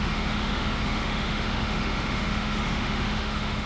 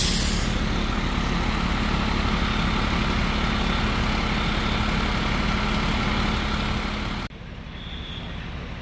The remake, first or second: first